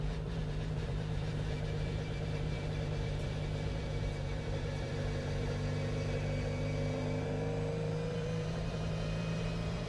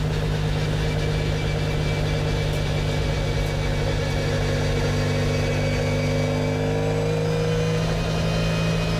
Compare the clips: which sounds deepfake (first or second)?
first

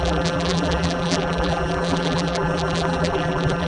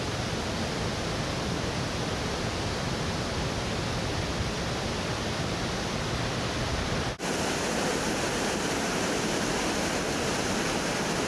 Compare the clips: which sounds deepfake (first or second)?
first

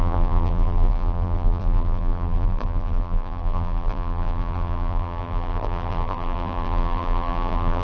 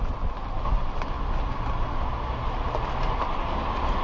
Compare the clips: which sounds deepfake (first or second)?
first